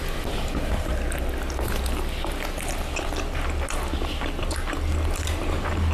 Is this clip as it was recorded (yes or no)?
yes